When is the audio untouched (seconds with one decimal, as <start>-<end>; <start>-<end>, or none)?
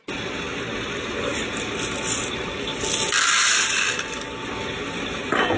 0.0-5.6